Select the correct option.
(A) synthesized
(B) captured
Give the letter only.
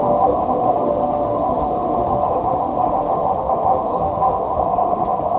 A